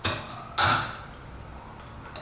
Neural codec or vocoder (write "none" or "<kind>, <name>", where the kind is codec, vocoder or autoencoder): none